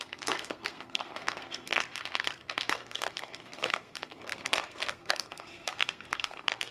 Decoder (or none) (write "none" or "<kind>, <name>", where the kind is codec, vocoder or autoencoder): codec, SNAC